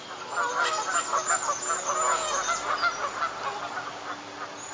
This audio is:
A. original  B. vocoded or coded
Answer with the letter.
A